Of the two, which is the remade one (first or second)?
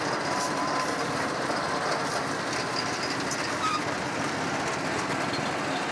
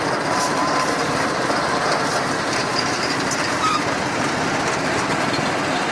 second